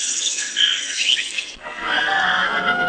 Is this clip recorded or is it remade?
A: remade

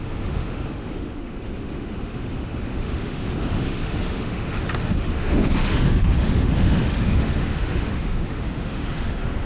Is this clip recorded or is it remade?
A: remade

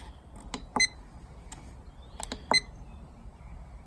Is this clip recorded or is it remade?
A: recorded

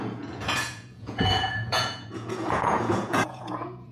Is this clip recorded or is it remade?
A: remade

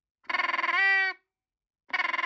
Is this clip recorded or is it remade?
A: recorded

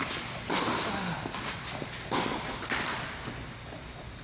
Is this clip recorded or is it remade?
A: recorded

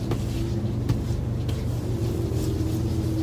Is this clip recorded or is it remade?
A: recorded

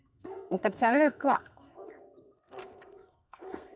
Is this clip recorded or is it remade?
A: remade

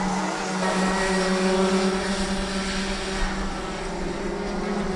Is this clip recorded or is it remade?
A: recorded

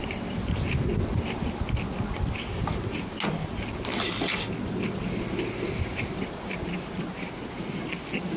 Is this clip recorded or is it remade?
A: recorded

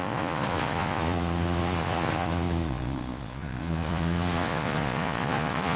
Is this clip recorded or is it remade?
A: remade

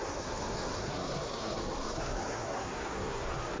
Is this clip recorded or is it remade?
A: remade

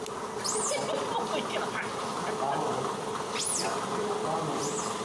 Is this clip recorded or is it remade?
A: recorded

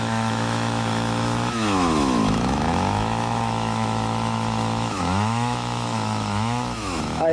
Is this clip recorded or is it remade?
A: remade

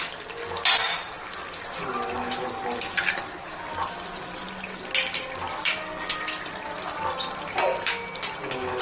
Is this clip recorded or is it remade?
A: recorded